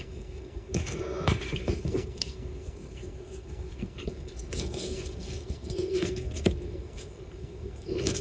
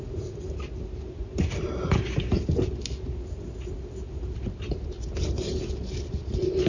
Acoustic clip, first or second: second